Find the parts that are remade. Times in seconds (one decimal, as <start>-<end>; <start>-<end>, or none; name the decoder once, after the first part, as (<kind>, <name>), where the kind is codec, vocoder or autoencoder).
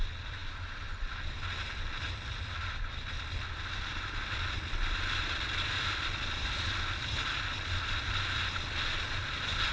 none